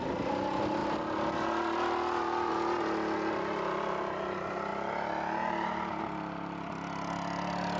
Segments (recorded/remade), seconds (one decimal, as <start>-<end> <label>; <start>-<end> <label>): 0.0-7.8 recorded